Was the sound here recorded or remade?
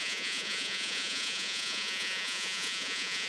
remade